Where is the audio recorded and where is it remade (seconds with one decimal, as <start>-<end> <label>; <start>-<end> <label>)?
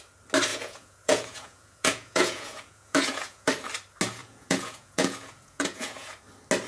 0.0-0.5 recorded; 0.5-3.5 remade; 3.5-4.2 recorded; 4.2-6.2 remade; 6.2-6.7 recorded